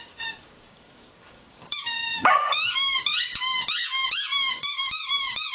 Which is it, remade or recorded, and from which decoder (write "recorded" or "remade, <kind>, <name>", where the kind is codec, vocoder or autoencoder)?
remade, codec, DAC